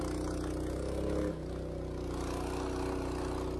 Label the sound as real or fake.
real